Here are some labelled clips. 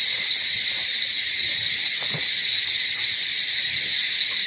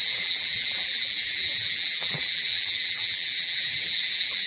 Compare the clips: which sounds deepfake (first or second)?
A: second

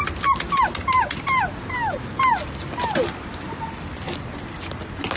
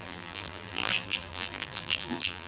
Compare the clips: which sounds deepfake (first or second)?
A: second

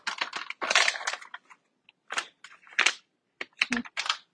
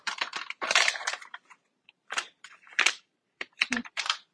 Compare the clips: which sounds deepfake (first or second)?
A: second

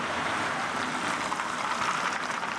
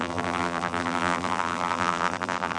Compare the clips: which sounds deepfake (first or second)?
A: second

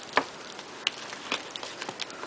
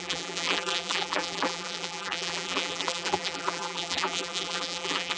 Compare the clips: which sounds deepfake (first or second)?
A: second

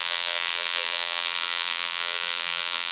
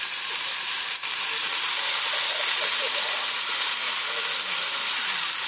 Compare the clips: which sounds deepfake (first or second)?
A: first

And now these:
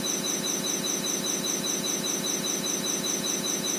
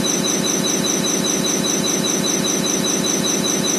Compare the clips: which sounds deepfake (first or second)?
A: second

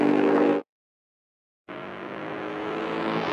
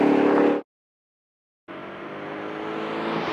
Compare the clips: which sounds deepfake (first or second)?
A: first